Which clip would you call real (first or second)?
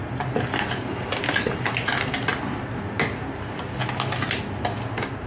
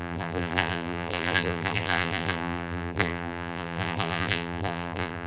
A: first